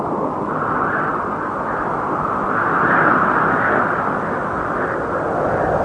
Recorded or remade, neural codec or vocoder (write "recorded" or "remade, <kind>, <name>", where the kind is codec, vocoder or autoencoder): recorded